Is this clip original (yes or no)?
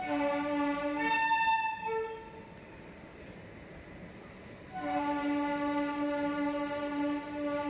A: yes